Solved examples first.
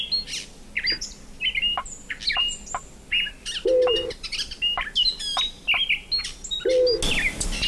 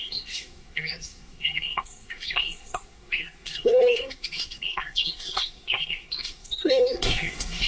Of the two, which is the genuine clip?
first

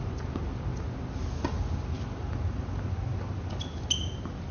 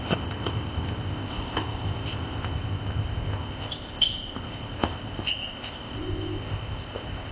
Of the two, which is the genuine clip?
first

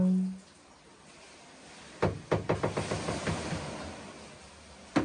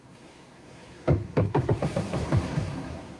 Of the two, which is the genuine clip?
first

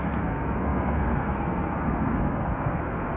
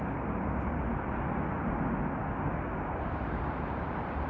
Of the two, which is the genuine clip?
second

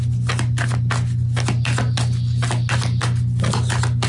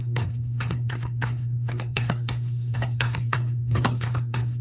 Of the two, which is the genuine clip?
first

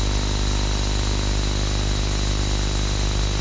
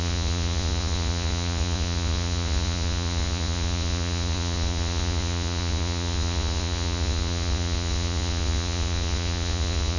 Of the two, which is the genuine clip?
first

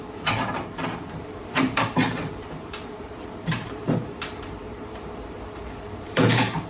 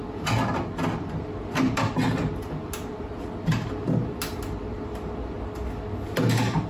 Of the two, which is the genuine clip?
second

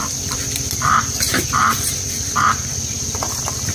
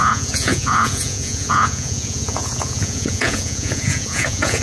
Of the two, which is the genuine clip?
first